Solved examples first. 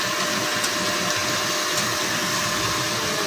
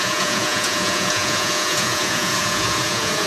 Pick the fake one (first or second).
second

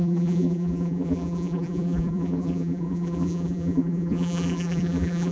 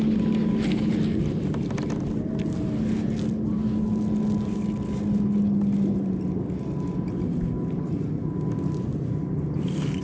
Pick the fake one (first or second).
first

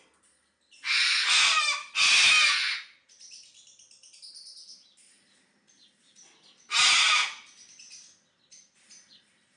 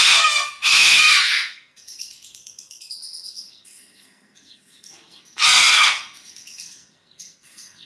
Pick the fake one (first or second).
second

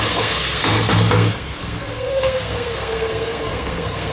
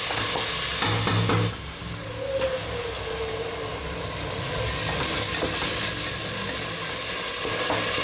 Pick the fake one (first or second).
first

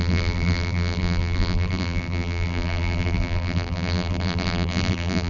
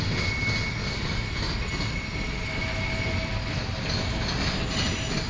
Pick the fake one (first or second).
first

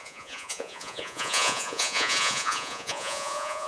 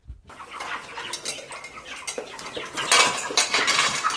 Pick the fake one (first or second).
first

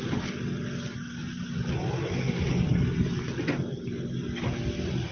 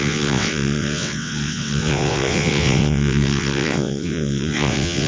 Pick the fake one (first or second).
second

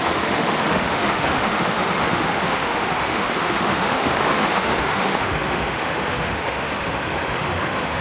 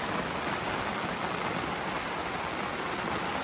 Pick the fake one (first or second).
first